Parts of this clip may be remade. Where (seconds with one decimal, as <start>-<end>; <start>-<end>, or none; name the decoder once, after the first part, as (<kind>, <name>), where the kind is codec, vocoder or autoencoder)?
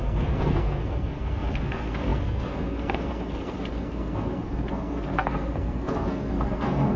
0.0-7.0 (codec, SNAC)